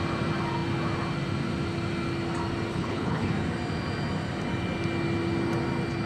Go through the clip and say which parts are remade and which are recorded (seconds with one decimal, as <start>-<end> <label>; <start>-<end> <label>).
0.0-2.7 recorded; 2.7-3.3 remade; 3.3-6.1 recorded